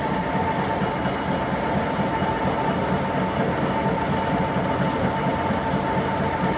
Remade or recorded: recorded